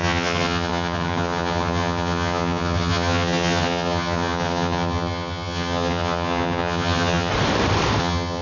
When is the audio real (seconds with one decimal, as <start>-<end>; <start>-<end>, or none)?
7.3-8.0